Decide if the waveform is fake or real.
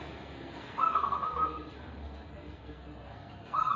fake